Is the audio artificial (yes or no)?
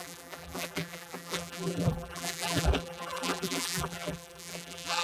yes